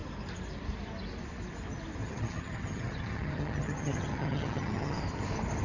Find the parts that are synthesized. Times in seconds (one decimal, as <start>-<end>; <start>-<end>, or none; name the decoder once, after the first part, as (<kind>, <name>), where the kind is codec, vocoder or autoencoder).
2.0-5.0 (vocoder, HiFi-GAN)

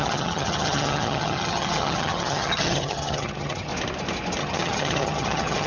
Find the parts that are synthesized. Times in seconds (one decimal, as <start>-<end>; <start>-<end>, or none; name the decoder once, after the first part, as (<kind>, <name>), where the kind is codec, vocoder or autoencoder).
0.0-3.7 (vocoder, HiFi-GAN); 4.4-5.7